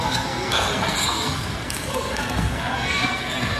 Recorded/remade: remade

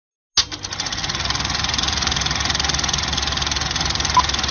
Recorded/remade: recorded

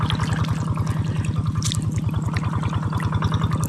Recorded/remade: recorded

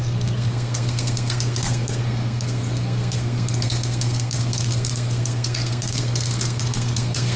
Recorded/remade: remade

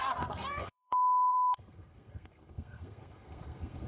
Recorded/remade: remade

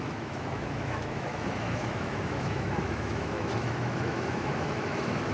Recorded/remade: remade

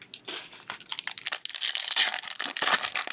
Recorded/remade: recorded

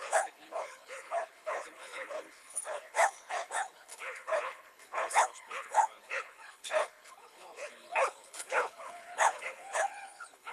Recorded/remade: remade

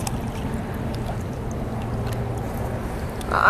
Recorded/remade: recorded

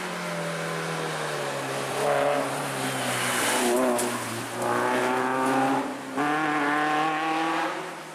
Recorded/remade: recorded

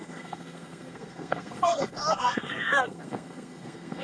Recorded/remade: remade